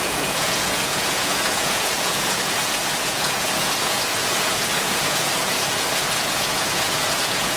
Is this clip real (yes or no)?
no